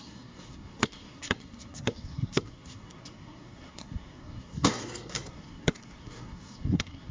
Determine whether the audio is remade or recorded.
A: remade